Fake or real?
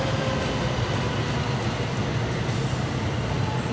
real